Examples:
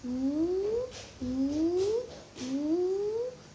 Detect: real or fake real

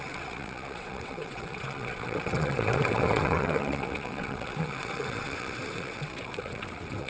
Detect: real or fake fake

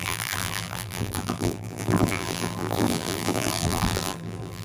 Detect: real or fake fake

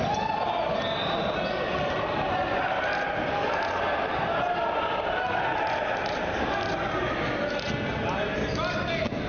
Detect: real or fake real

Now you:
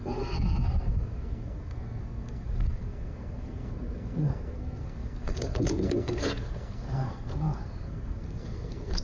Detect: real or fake fake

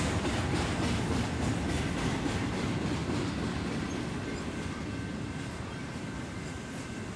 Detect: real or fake real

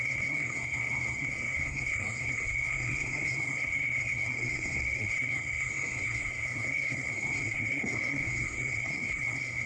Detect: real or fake fake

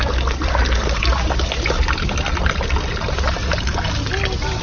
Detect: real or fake real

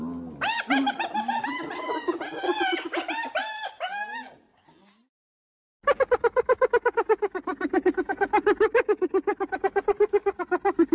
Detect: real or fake real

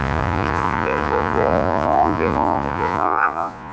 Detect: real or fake fake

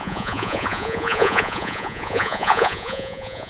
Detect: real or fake fake